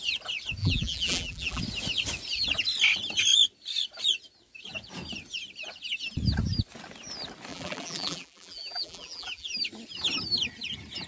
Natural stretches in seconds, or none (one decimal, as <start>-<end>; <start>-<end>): 0.0-0.6; 1.6-7.5; 9.5-11.1